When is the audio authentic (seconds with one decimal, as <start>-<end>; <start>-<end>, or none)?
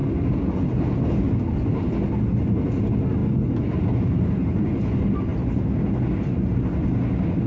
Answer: 0.0-7.5